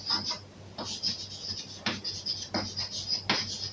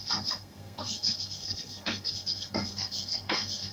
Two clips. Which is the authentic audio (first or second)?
first